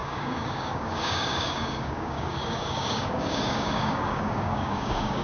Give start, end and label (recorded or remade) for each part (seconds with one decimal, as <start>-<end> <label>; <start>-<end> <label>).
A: 0.0-5.2 remade